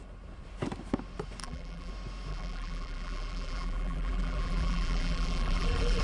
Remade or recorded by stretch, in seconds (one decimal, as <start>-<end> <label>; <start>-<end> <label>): 0.0-1.4 recorded; 1.4-1.9 remade; 1.9-2.3 recorded; 2.3-6.0 remade